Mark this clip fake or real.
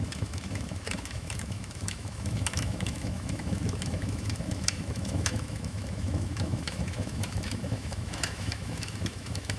fake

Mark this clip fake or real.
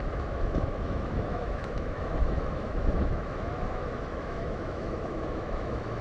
fake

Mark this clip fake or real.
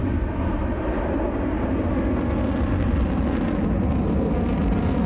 real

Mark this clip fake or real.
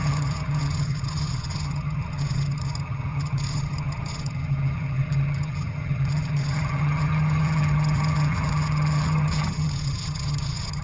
fake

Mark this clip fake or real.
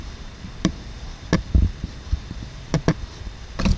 fake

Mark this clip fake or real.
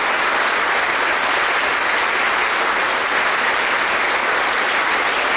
real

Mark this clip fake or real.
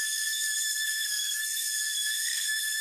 fake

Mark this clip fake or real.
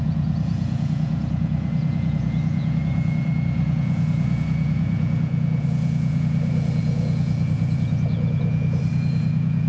fake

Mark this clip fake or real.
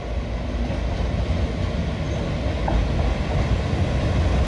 real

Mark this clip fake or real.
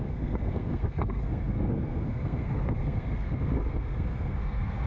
fake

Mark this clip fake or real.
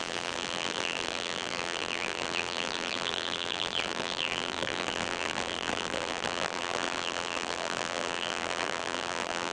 fake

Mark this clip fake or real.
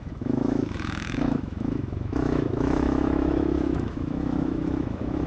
fake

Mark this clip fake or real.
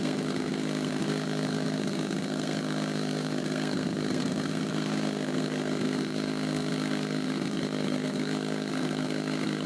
fake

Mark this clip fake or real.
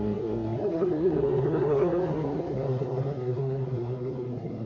fake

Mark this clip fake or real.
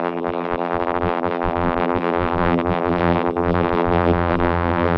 fake